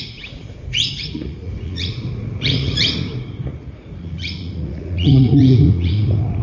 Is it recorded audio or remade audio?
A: remade